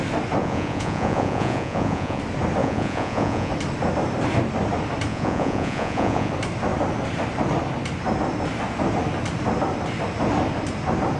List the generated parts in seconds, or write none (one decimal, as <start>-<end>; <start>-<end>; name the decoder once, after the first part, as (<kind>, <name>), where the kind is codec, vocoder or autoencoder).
0.4-2.2 (vocoder, Vocos); 2.6-3.5; 5.1-6.3